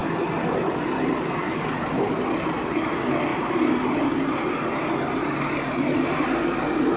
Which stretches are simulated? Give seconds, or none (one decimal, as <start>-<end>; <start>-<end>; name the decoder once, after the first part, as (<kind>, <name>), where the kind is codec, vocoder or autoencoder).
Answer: none